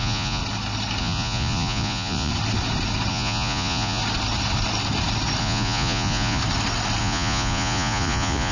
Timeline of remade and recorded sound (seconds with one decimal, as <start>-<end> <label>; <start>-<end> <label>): 0.0-0.4 remade; 0.4-1.0 recorded; 1.0-2.3 remade; 2.3-3.1 recorded; 3.1-4.0 remade; 4.0-5.4 recorded; 5.4-6.4 remade; 6.4-7.0 recorded; 7.0-8.5 remade